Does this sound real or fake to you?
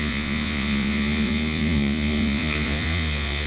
fake